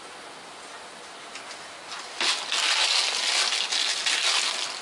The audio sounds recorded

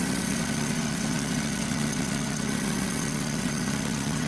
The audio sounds remade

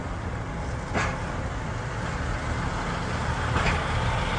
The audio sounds recorded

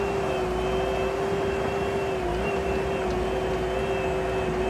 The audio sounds recorded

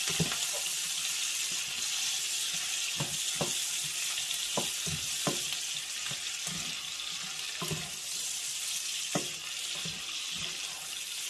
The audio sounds recorded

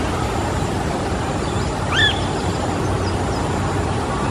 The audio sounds recorded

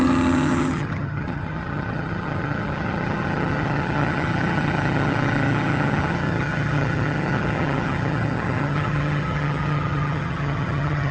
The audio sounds remade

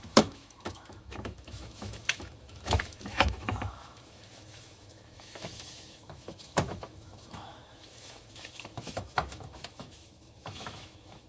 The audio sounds remade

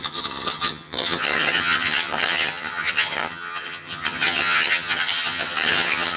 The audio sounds remade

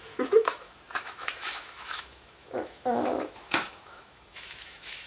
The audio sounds remade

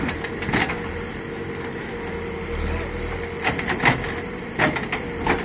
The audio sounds recorded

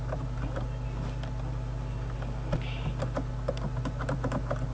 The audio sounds recorded